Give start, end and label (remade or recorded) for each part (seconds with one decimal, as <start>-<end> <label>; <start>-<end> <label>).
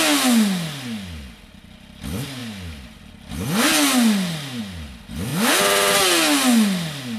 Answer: 0.0-7.2 recorded